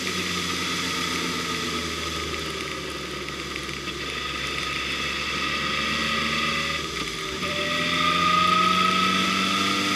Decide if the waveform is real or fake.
real